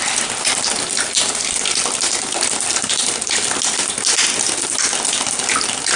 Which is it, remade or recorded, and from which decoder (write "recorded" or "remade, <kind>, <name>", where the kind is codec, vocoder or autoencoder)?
recorded